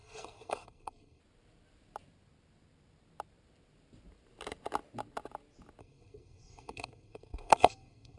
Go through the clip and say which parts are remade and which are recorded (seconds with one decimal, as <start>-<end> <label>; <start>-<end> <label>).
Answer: 0.0-1.2 remade; 1.2-5.8 recorded; 5.8-8.2 remade